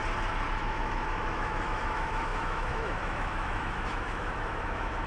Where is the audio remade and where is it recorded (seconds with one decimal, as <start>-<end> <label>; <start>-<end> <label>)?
0.0-0.6 recorded; 0.6-5.1 remade